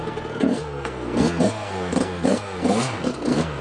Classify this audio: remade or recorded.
remade